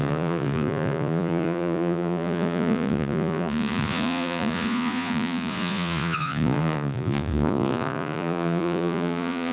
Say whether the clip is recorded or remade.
remade